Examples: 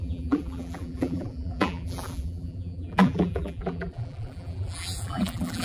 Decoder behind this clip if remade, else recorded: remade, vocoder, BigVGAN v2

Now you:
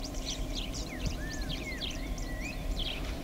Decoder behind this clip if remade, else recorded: remade, vocoder, BigVGAN v2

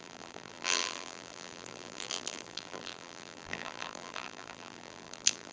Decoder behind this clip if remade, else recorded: remade, vocoder, BigVGAN v2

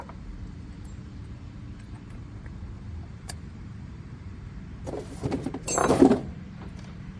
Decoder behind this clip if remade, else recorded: remade, vocoder, BigVGAN v2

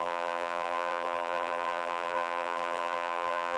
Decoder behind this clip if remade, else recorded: remade, vocoder, BigVGAN v2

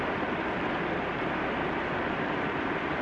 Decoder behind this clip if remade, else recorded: remade, vocoder, BigVGAN v2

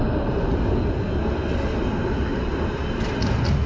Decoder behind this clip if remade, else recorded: recorded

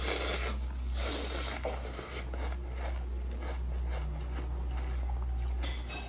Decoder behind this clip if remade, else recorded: recorded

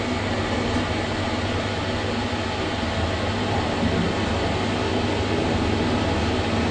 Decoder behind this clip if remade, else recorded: recorded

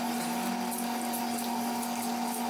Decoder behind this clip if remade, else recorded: recorded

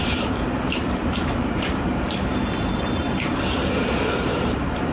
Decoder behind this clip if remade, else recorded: remade, vocoder, BigVGAN v2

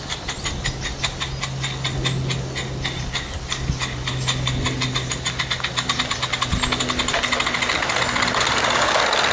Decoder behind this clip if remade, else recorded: recorded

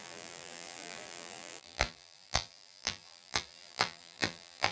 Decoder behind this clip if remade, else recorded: remade, vocoder, BigVGAN v2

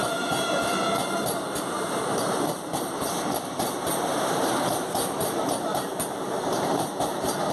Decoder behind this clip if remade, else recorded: remade, vocoder, BigVGAN v2